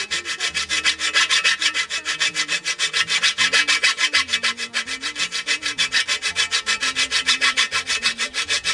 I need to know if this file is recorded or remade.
recorded